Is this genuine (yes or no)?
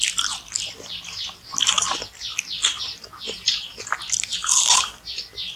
yes